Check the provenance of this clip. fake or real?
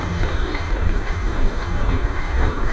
fake